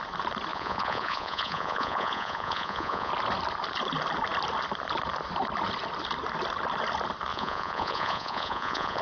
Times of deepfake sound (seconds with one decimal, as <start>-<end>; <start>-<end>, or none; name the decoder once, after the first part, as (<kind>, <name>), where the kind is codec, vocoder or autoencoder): 0.5-3.1 (vocoder, Vocos); 7.3-9.0